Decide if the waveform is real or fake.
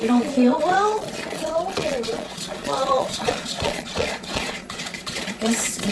fake